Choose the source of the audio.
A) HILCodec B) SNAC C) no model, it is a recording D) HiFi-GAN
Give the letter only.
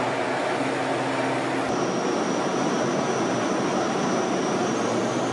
C